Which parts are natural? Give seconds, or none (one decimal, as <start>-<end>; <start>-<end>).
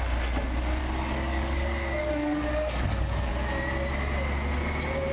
0.0-0.8; 3.3-5.1